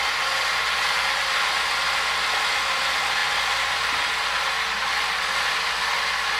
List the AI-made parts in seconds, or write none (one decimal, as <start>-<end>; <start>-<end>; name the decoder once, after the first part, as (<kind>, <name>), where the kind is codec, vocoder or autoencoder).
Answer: none